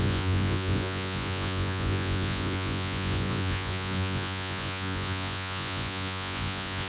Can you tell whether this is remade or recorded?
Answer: remade